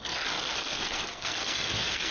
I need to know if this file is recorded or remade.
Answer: remade